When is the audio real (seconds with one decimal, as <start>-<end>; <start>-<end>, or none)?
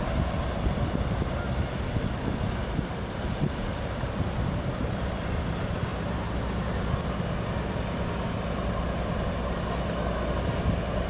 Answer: 0.0-2.6; 4.2-11.1